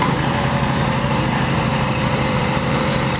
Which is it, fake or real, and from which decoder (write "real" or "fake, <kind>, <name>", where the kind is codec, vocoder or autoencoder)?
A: fake, vocoder, BigVGAN v2